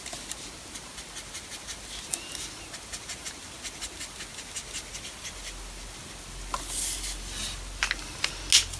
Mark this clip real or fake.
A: real